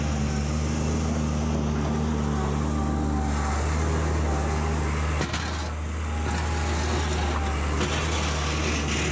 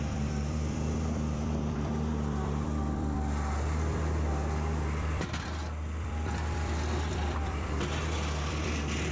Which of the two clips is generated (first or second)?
second